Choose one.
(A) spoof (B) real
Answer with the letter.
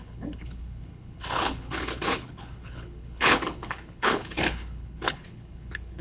A